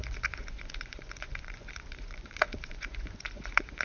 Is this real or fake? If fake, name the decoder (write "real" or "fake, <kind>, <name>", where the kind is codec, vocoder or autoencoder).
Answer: fake, vocoder, Vocos